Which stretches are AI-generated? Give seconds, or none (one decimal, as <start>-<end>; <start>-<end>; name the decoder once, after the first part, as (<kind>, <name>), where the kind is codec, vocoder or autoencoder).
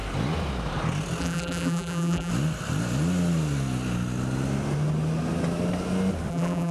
1.2-2.3 (vocoder, BigVGAN v2); 6.3-6.7